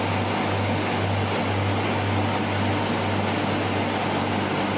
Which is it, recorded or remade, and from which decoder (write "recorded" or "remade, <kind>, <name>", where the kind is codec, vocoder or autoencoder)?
recorded